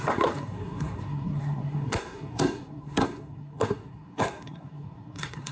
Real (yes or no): no